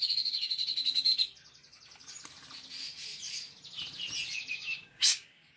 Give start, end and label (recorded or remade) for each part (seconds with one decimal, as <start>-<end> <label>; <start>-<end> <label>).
0.0-1.1 remade; 1.1-4.5 recorded; 4.5-5.6 remade